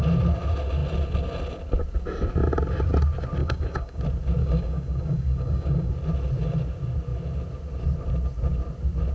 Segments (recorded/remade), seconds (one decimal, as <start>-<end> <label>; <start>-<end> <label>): 0.0-3.4 recorded; 3.4-4.0 remade; 4.0-4.4 recorded; 4.4-5.9 remade; 5.9-9.1 recorded